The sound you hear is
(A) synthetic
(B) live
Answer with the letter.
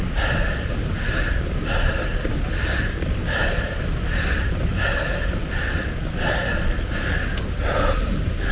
B